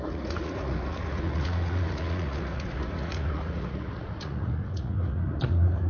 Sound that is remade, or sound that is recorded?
remade